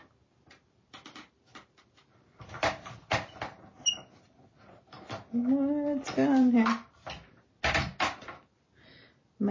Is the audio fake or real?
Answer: real